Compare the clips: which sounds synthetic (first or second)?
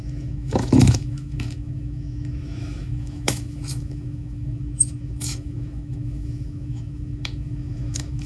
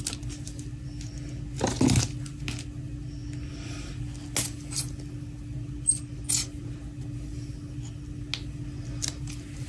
first